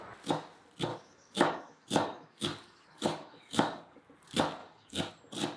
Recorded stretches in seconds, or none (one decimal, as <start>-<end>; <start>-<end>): 0.0-0.9; 4.0-4.6; 5.1-5.6